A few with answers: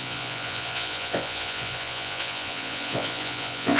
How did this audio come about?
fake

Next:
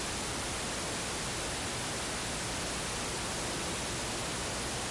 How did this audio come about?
real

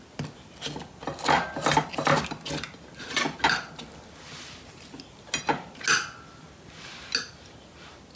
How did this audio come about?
real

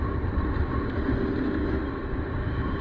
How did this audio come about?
real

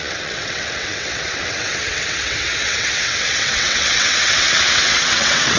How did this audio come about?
fake